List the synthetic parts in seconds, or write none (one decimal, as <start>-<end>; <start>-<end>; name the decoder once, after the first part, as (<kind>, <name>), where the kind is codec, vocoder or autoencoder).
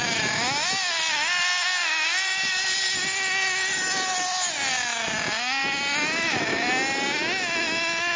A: none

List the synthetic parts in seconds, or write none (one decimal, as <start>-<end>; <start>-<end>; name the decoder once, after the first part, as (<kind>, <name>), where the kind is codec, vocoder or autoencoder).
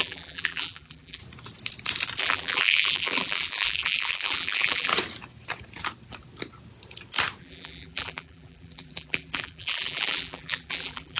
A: 0.0-1.2 (vocoder, BigVGAN v2); 2.2-4.9; 7.4-11.2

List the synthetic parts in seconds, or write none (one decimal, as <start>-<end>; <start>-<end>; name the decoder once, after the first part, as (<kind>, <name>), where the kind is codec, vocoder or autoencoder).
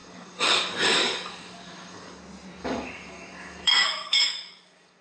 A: 0.0-2.2 (codec, DAC); 2.6-5.0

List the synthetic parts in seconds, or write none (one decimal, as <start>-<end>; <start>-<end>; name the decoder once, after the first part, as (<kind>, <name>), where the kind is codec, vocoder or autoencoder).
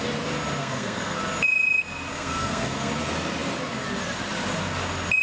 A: 0.6-1.2 (codec, SNAC); 2.1-2.9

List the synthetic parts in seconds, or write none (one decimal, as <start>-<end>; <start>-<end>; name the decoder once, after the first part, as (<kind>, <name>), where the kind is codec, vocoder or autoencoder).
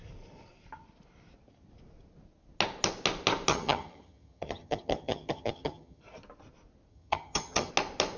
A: 3.5-6.0 (vocoder, HiFi-GAN); 6.9-7.7